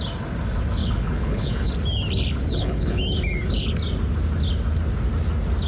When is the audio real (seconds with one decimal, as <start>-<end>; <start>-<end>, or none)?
0.0-0.8; 1.7-2.5; 3.0-5.7